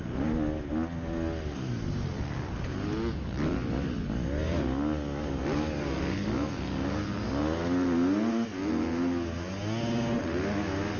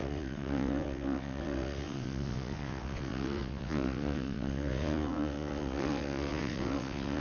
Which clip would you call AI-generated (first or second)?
second